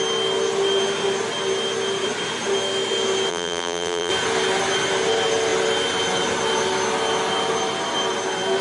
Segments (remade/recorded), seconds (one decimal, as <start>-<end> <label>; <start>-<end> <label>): 0.0-3.3 recorded; 3.3-4.1 remade; 4.1-8.6 recorded